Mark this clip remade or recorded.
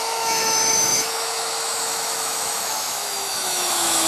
remade